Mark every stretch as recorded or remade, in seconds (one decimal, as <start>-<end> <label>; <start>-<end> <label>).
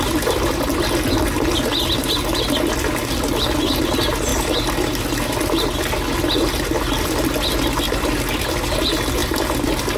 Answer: 0.0-9.2 recorded; 9.2-10.0 remade